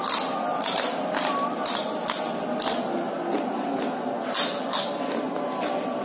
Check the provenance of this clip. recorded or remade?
recorded